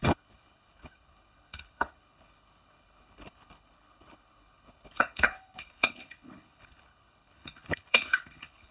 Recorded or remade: remade